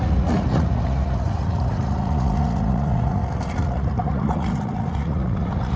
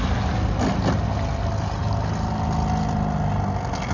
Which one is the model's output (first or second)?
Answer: first